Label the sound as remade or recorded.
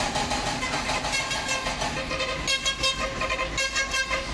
recorded